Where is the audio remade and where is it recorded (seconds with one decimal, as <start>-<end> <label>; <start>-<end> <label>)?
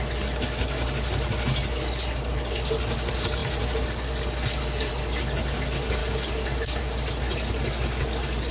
0.0-8.5 recorded